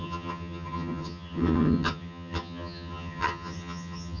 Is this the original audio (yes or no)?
no